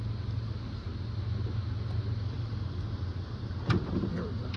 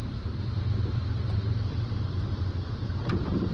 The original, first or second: first